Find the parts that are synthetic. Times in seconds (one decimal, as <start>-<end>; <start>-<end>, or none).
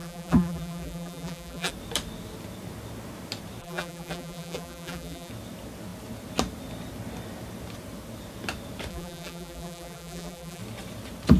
0.0-1.7; 3.6-5.3; 8.9-10.6